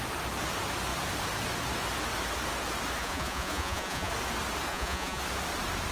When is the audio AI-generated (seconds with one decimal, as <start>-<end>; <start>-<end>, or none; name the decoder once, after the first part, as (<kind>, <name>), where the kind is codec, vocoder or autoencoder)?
3.0-4.1 (vocoder, Vocos); 4.7-5.2